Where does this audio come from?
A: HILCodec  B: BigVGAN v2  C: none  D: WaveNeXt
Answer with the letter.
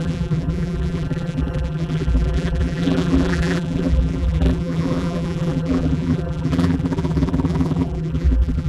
B